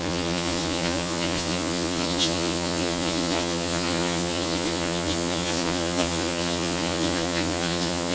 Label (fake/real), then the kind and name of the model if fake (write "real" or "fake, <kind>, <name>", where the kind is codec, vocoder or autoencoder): fake, vocoder, Vocos